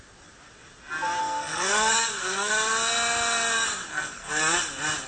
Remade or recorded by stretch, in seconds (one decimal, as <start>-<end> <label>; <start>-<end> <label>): 0.0-1.2 recorded; 1.2-2.5 remade; 2.5-3.9 recorded; 3.9-4.4 remade; 4.4-5.1 recorded